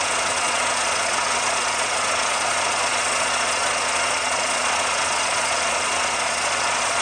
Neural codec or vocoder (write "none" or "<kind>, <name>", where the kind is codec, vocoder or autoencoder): vocoder, Vocos